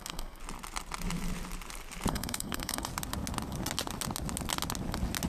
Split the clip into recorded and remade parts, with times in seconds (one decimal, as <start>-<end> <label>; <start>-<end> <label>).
0.0-0.4 remade; 0.4-2.1 recorded; 2.1-2.9 remade; 2.9-5.3 recorded

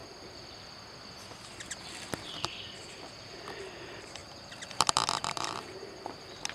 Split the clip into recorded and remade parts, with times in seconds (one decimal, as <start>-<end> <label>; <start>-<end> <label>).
0.0-1.9 recorded; 1.9-6.5 remade

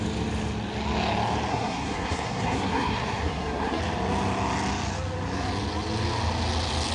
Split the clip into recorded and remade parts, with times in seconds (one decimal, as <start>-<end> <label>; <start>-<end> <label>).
0.0-1.5 recorded; 1.5-3.8 remade; 3.8-6.9 recorded